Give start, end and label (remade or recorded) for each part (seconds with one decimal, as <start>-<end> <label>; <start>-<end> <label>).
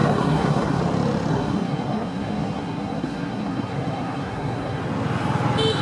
0.0-0.8 remade; 0.8-1.3 recorded; 1.3-4.8 remade; 4.8-5.8 recorded